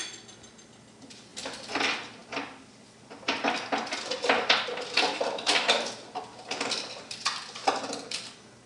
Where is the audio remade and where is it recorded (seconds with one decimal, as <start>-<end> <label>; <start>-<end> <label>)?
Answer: 0.0-8.7 recorded

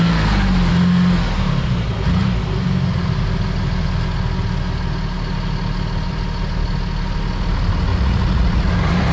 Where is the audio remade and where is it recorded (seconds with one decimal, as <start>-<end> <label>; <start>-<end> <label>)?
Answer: 0.0-7.9 recorded; 7.9-8.7 remade; 8.7-9.1 recorded